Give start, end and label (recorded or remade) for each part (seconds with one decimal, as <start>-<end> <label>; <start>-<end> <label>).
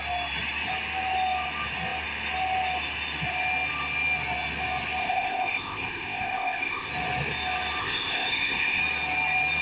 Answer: 0.0-5.0 recorded; 5.0-6.9 remade; 6.9-7.8 recorded; 7.8-8.8 remade; 8.8-9.6 recorded